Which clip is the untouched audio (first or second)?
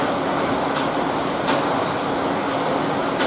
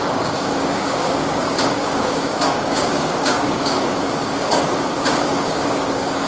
first